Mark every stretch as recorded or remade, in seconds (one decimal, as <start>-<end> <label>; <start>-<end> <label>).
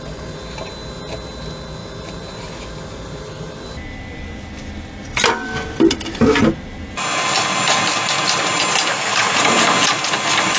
0.0-8.9 recorded; 8.9-9.4 remade; 9.4-10.6 recorded